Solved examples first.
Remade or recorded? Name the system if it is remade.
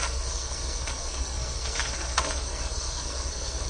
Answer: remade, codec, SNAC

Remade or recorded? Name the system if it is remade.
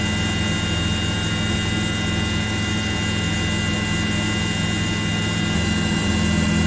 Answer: recorded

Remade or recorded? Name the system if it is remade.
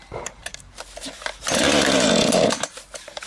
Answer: remade, vocoder, BigVGAN v2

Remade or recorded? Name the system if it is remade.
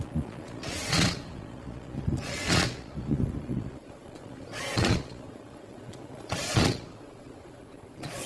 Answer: remade, vocoder, Vocos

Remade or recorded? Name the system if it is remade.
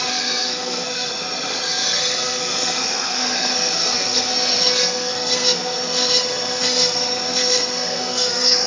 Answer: remade, codec, SNAC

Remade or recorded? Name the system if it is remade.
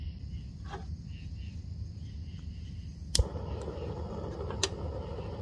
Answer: recorded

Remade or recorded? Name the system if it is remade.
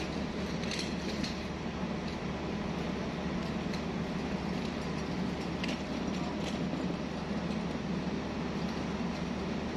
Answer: recorded